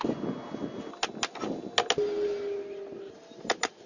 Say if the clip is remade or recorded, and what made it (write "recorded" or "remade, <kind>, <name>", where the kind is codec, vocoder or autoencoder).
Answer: recorded